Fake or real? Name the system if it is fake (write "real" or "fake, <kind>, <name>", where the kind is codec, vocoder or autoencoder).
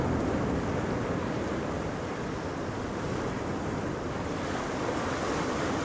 real